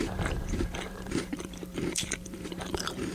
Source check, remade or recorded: remade